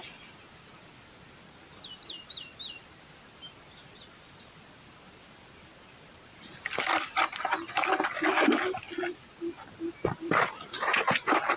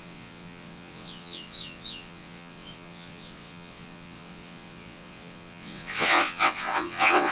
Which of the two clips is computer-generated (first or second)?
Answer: second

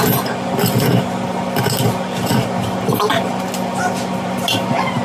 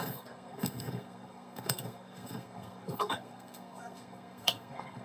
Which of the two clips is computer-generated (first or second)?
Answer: second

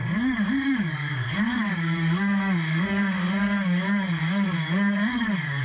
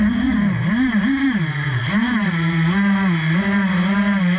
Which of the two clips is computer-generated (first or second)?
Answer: first